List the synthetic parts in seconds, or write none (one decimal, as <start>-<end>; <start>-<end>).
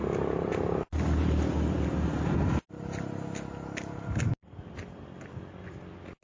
none